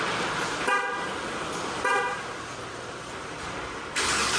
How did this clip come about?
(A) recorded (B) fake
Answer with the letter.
B